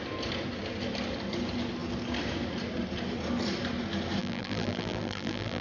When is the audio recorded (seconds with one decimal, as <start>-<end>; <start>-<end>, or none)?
0.0-4.2